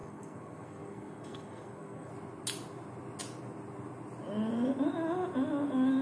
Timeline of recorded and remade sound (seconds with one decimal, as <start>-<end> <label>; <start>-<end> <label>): 0.0-2.1 remade; 2.1-6.0 recorded